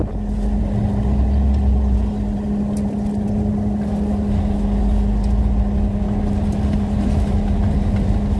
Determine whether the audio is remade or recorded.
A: recorded